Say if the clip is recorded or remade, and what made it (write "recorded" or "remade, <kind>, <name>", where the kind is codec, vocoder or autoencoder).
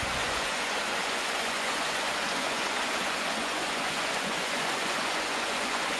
remade, vocoder, Vocos